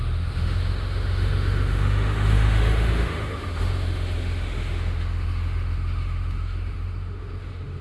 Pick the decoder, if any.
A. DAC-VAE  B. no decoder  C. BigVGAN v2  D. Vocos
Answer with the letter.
A